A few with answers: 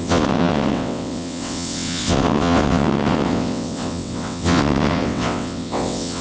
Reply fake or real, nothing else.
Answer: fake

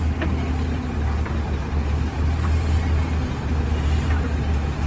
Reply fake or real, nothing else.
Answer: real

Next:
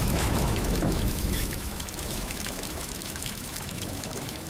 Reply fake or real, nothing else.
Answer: fake